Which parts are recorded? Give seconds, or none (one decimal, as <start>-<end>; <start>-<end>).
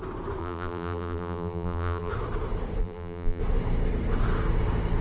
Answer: 0.0-0.4; 2.1-2.8; 3.4-5.0